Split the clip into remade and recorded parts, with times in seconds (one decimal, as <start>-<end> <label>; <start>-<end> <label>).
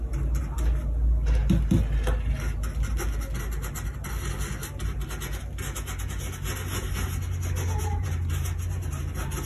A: 0.0-7.8 recorded; 7.8-9.0 remade; 9.0-9.5 recorded